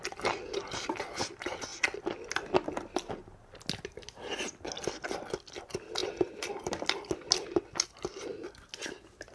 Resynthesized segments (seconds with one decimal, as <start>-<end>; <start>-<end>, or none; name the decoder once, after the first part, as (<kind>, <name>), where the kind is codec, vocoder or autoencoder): 6.0-6.7 (vocoder, BigVGAN v2)